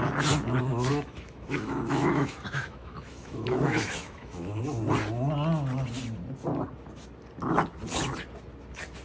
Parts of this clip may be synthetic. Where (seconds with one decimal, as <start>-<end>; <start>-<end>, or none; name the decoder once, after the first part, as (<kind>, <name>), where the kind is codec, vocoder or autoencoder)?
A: 0.7-4.6 (autoencoder, DAC-VAE)